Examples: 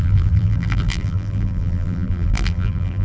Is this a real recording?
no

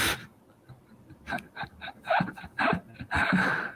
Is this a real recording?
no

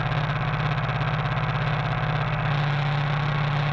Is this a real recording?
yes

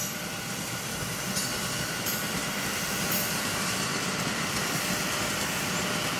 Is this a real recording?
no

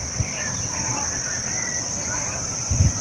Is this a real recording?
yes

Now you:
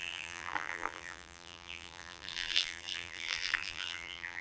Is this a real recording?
no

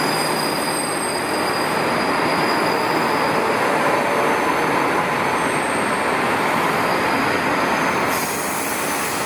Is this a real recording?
yes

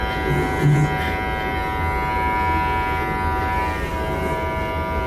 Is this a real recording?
yes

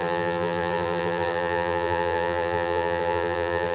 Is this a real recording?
no